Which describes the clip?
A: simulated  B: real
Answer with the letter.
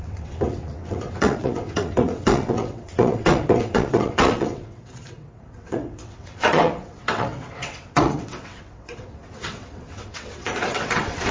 A